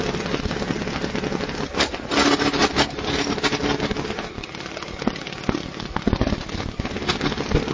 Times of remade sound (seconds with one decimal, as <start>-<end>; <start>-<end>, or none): none